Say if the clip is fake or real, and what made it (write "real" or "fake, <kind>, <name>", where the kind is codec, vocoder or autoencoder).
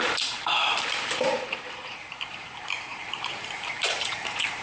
fake, vocoder, BigVGAN v2